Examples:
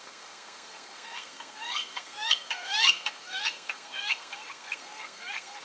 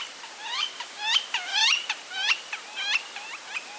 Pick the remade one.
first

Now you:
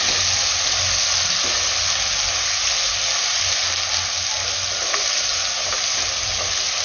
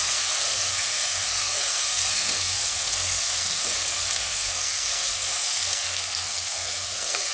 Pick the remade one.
second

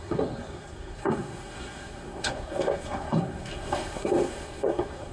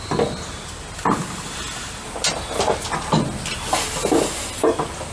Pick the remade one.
first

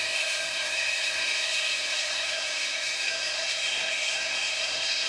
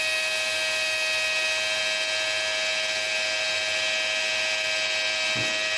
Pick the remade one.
first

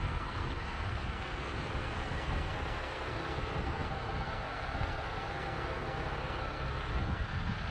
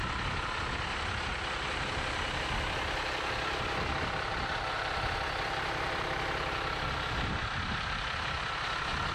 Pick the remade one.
first